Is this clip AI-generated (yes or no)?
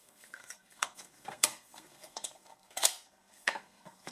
yes